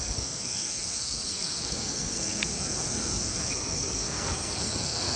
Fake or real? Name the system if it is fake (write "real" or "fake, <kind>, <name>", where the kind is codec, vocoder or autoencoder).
fake, codec, SNAC